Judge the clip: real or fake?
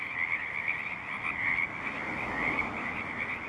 real